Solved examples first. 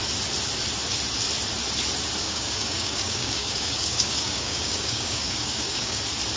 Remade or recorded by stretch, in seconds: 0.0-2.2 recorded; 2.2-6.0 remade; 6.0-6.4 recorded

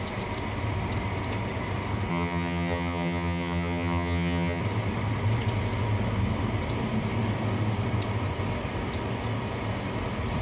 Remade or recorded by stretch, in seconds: 0.0-2.1 recorded; 2.1-4.6 remade; 4.6-10.4 recorded